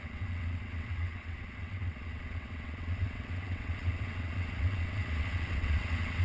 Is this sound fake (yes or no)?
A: yes